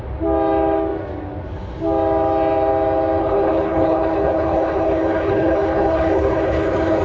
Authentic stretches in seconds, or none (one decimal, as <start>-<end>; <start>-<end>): 0.0-3.2